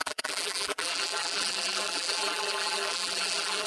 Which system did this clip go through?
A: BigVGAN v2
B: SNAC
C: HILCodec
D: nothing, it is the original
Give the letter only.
A